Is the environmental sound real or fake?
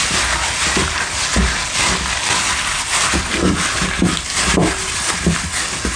real